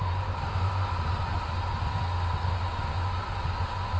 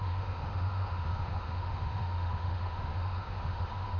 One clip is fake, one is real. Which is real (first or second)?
first